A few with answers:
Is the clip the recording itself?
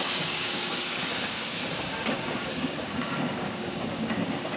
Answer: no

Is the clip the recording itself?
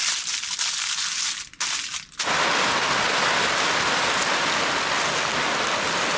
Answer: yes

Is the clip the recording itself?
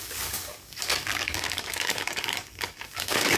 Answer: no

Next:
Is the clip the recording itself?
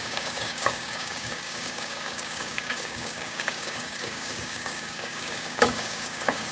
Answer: no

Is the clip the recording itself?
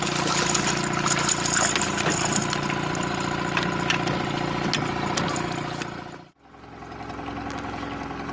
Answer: yes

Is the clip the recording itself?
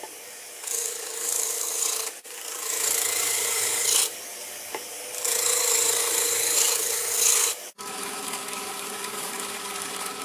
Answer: no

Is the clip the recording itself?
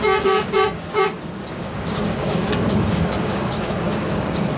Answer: no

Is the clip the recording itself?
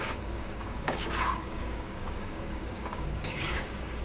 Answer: no